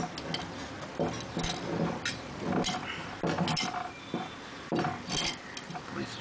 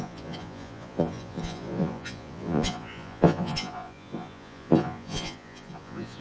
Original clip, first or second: first